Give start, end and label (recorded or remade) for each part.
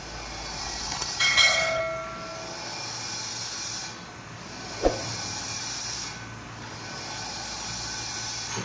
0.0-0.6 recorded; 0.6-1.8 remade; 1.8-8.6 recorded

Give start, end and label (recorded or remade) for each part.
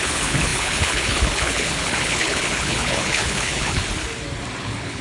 0.0-3.8 remade; 3.8-4.6 recorded; 4.6-5.0 remade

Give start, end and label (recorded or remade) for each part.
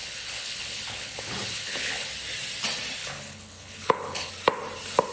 0.0-2.1 remade; 2.1-3.0 recorded; 3.0-4.3 remade; 4.3-5.1 recorded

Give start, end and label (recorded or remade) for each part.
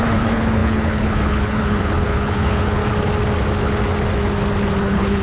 0.0-2.8 remade; 2.8-4.8 recorded; 4.8-5.2 remade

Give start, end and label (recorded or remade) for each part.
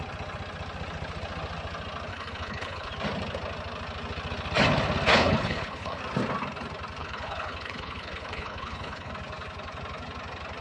0.0-2.1 recorded; 2.1-2.9 remade; 2.9-5.1 recorded; 5.1-6.0 remade; 6.0-7.0 recorded; 7.0-9.1 remade; 9.1-10.6 recorded